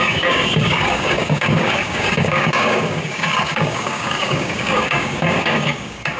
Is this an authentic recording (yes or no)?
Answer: no